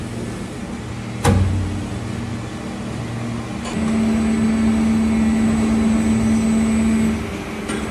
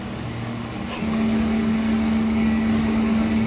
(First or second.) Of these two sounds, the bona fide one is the first